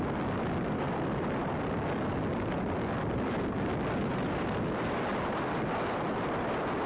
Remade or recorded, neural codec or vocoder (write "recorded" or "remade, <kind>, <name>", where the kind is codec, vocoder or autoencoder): recorded